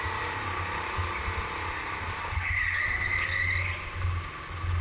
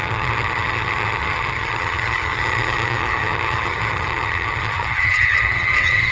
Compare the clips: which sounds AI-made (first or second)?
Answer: second